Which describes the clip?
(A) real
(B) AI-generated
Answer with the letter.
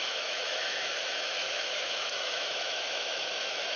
B